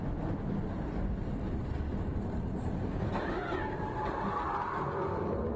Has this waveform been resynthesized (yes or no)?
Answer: no